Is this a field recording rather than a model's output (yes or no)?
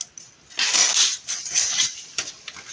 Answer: yes